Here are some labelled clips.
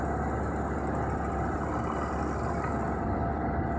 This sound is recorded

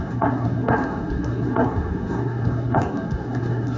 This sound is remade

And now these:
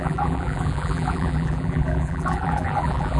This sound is remade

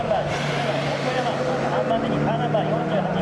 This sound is recorded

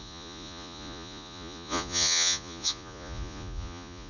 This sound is remade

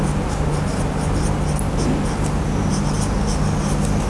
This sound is recorded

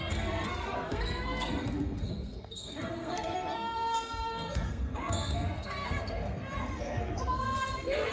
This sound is remade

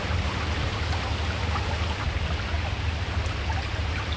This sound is recorded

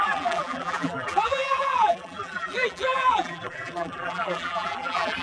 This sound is remade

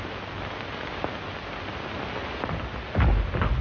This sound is recorded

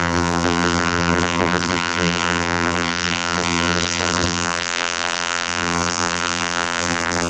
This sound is remade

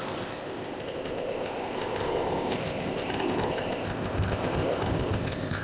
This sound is remade